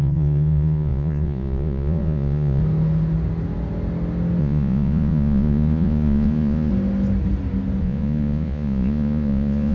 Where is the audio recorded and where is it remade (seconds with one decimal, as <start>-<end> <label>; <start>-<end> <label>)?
0.0-2.6 remade; 2.6-4.4 recorded; 4.4-6.7 remade; 6.7-7.8 recorded; 7.8-9.7 remade